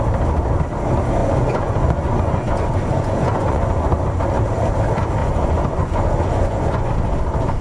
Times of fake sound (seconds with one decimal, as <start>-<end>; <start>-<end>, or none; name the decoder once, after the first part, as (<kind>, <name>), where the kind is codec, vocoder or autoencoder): 1.2-4.2 (vocoder, Vocos); 5.2-6.9